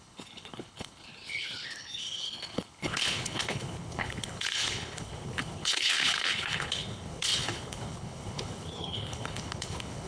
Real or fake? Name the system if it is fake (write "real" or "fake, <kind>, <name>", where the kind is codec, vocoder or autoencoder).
fake, codec, HILCodec